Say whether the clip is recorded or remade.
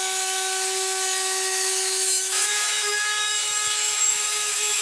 remade